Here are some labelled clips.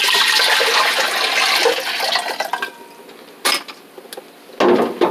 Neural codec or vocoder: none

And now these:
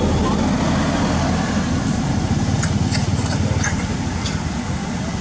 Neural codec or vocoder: none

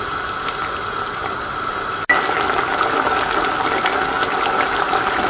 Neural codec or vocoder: none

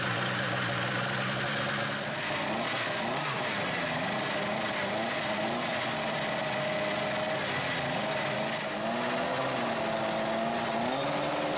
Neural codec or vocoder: none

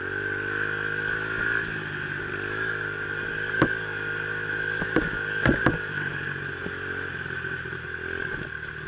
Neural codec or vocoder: none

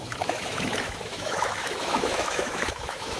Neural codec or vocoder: autoencoder, DAC-VAE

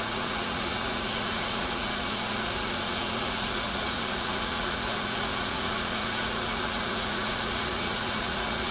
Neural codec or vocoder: vocoder, Vocos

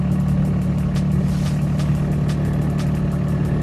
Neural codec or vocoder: none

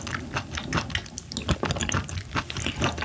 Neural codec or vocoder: none